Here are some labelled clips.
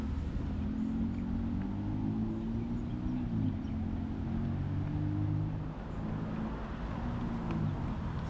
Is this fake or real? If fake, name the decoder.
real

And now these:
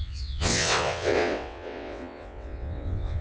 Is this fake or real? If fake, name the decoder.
fake, vocoder, WaveNeXt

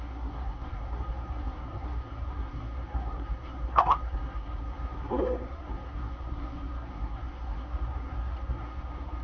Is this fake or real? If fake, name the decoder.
fake, codec, SNAC